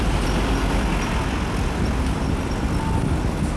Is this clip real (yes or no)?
yes